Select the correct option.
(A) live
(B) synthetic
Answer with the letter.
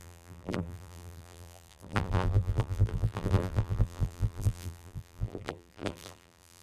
B